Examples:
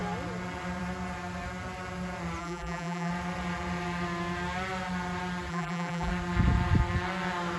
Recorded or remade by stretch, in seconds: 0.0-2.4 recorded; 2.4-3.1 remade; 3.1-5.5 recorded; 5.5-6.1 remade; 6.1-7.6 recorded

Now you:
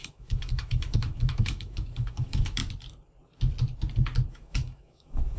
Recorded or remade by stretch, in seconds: 0.0-2.6 remade; 2.6-4.3 recorded; 4.3-5.4 remade

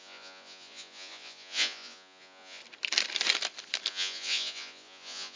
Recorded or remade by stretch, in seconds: 0.0-2.6 remade; 2.6-3.9 recorded; 3.9-5.4 remade

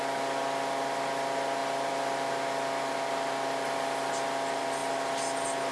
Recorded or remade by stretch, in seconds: 0.0-5.7 recorded

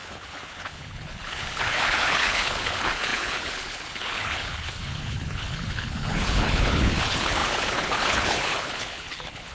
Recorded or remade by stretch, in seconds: 0.0-9.5 remade

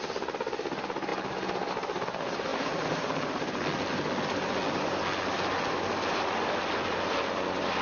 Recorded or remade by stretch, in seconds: 0.0-7.8 recorded